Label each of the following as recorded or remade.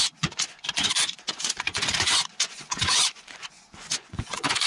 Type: remade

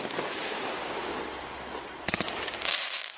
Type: recorded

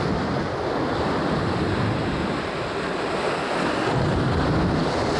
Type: recorded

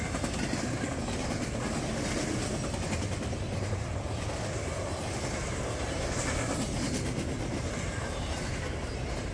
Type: recorded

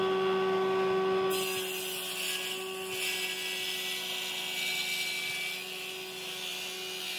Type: recorded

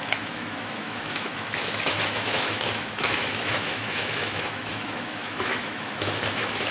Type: remade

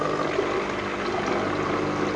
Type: recorded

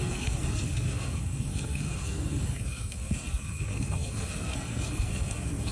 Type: remade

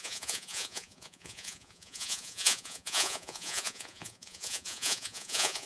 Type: remade